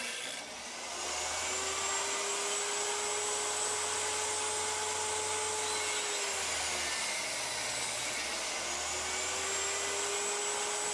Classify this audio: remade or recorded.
recorded